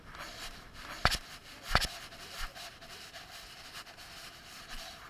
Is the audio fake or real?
real